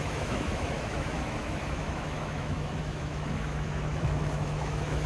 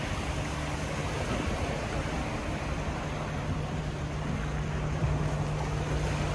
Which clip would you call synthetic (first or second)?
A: first